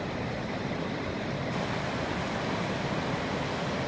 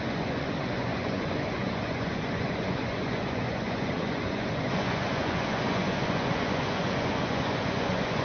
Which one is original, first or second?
first